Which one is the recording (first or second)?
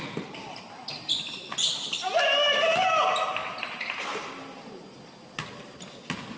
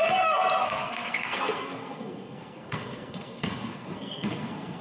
first